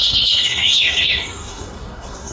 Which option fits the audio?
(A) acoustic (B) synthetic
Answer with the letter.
B